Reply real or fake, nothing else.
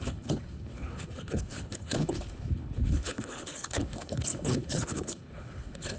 fake